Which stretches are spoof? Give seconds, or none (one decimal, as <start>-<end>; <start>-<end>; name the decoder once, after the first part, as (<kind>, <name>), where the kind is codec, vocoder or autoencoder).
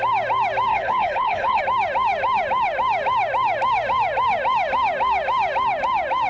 0.7-1.6 (codec, HILCodec)